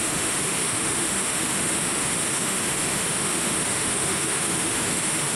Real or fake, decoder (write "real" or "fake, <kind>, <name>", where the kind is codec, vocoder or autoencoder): fake, autoencoder, DAC-VAE